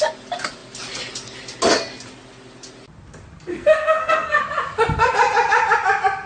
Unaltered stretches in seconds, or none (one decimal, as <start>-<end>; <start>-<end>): 0.0-3.5; 4.4-6.3